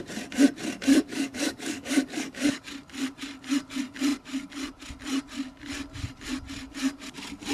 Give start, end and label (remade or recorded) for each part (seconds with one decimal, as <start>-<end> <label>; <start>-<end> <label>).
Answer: 0.0-0.9 recorded; 0.9-2.6 remade; 2.6-7.5 recorded